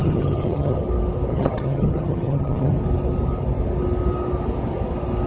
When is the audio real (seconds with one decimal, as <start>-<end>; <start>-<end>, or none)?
0.8-1.3; 2.7-5.3

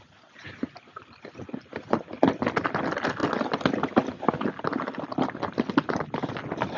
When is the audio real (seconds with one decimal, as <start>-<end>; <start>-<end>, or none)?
0.0-6.8

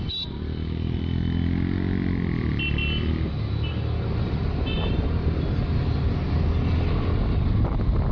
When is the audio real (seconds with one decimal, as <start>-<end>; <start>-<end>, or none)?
0.0-8.1

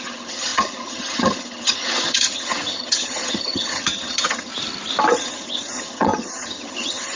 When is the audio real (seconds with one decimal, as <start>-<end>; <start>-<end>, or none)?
4.5-5.1

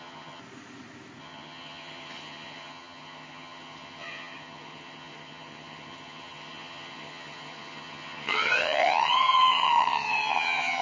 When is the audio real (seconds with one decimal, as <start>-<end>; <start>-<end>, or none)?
0.4-1.2